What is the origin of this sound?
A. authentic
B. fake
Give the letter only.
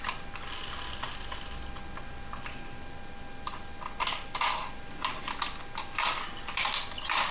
A